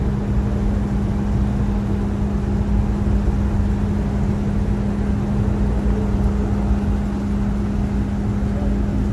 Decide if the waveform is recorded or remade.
recorded